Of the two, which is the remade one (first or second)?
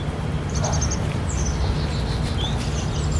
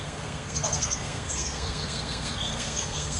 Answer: second